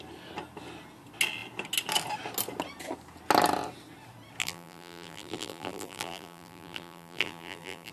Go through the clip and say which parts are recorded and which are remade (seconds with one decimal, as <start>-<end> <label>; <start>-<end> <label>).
0.0-4.4 recorded; 4.4-7.9 remade